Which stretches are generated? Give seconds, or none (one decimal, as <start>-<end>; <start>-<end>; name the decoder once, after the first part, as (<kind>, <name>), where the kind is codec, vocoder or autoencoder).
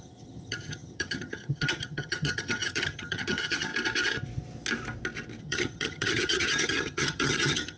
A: 0.0-3.7 (vocoder, HiFi-GAN); 5.4-7.8